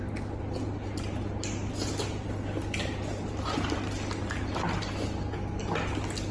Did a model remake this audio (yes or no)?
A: no